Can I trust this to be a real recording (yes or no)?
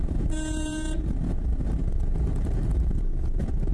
no